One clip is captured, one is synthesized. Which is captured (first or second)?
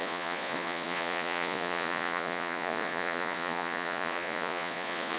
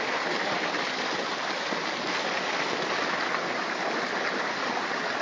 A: second